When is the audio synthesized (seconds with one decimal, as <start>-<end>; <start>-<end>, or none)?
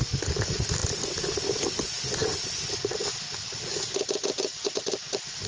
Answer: 2.2-3.1